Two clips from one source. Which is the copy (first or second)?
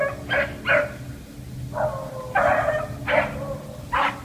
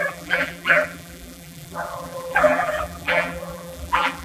second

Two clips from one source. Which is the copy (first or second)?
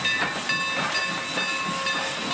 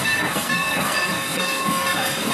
second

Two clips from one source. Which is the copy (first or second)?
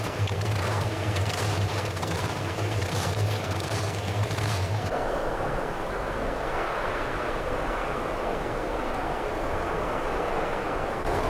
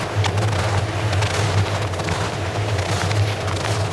first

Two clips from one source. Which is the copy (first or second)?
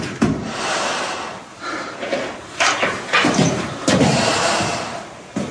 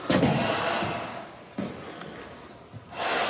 first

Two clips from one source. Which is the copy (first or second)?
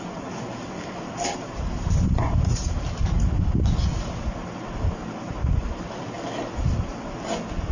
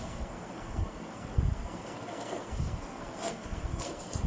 second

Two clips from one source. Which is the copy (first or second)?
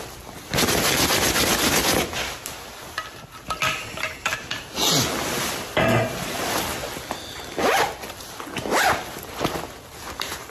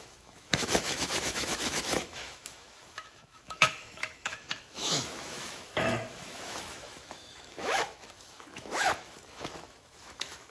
second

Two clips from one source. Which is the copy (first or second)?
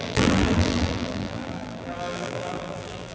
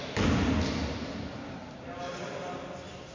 first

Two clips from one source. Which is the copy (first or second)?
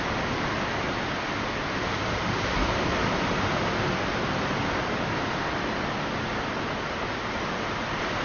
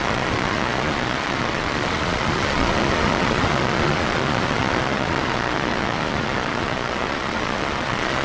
second